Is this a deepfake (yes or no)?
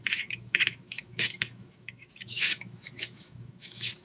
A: yes